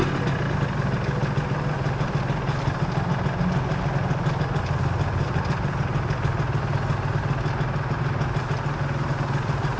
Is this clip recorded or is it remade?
recorded